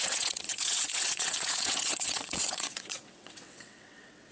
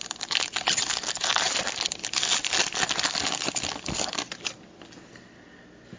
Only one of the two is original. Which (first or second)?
second